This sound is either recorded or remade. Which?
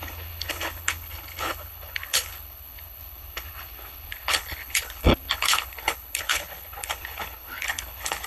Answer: remade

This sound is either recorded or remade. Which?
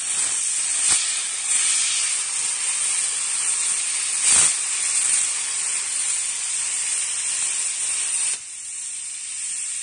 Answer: recorded